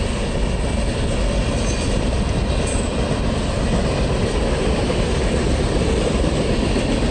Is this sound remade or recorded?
recorded